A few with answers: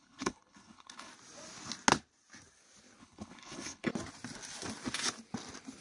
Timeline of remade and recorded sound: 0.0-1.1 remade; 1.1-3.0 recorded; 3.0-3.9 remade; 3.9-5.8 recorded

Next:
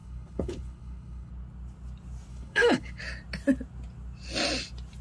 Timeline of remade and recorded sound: 0.0-1.3 remade; 1.3-2.3 recorded; 2.3-3.0 remade; 3.0-5.0 recorded

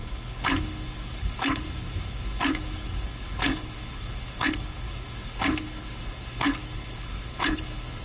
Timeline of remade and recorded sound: 0.0-8.0 remade

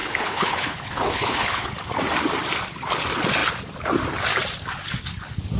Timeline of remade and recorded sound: 0.0-1.7 remade; 1.7-5.6 recorded